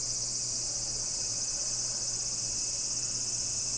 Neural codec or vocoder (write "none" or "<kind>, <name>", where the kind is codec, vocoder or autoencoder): none